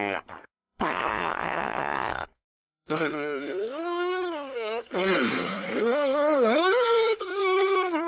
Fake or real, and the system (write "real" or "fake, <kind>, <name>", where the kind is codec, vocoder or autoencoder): fake, codec, SNAC